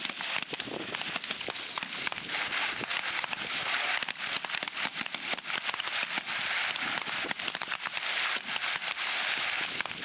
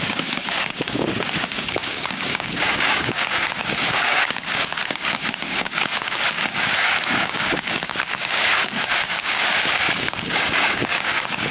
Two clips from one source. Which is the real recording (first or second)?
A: first